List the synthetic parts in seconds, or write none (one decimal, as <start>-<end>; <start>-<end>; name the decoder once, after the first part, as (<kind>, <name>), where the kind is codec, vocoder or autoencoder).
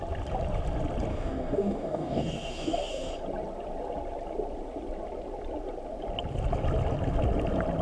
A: 1.1-3.1 (codec, DAC)